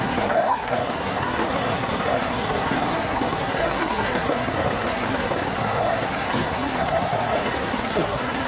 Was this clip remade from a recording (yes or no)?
yes